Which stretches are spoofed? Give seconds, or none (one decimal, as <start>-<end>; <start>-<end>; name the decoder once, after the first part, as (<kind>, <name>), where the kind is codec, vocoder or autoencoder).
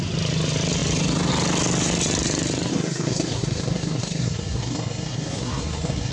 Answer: 2.7-6.1 (codec, SNAC)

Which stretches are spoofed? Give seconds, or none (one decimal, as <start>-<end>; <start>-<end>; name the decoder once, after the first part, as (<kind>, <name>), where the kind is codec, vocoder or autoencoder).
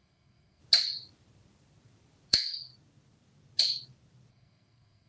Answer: 0.0-0.6 (codec, SNAC); 2.3-2.7; 4.3-5.1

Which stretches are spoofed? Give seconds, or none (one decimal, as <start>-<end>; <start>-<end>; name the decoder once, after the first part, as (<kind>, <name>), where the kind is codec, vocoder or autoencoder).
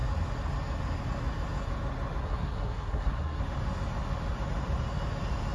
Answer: 2.2-3.4 (codec, SNAC)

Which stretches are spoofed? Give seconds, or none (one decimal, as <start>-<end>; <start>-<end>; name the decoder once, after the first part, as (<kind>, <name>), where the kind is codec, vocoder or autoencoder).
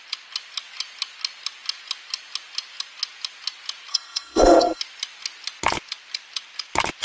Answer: 3.9-4.8 (codec, SNAC)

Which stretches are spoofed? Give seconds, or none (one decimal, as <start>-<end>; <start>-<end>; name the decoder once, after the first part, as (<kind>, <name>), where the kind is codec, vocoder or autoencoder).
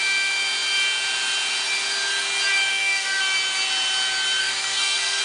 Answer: 2.7-3.2 (codec, SNAC); 4.4-5.2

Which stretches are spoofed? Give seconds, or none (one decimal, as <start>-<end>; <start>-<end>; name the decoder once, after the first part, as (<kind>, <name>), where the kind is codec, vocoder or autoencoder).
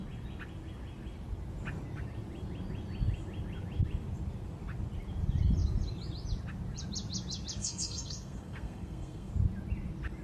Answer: 7.6-9.3 (codec, SNAC)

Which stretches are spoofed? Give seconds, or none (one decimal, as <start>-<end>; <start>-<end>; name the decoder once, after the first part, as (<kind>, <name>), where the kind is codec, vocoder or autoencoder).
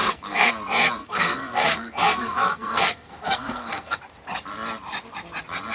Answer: 0.0-0.5 (codec, SNAC); 1.0-4.0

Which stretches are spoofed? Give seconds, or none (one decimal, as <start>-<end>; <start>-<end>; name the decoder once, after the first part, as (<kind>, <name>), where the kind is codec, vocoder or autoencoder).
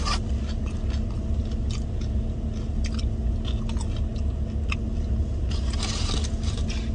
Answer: none